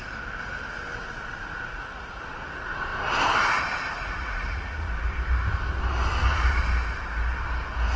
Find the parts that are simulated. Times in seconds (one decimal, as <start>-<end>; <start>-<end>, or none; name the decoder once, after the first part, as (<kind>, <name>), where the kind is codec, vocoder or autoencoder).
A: 1.7-2.2 (vocoder, Vocos); 4.0-4.9